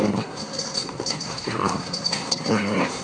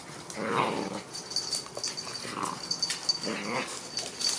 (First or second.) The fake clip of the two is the first